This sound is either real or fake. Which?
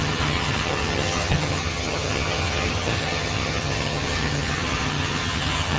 fake